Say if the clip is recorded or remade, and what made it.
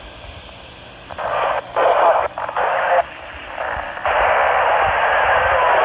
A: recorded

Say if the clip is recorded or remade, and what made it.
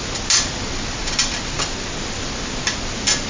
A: recorded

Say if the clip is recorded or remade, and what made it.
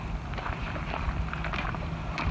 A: recorded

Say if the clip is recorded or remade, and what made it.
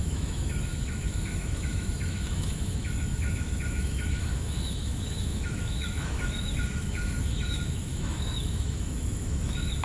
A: remade, autoencoder, DAC-VAE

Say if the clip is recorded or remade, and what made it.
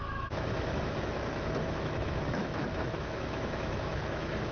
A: remade, autoencoder, DAC-VAE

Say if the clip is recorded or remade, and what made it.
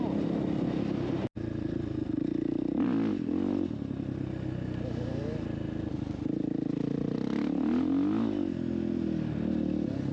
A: recorded